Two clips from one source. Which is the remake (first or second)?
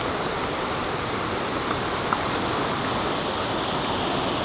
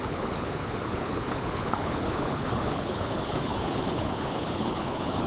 second